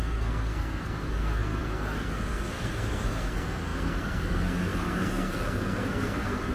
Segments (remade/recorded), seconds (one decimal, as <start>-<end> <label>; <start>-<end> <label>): 0.0-6.5 remade